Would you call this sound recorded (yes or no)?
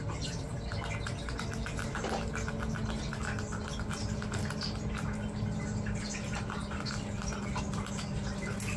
yes